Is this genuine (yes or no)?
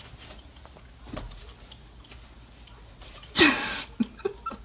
yes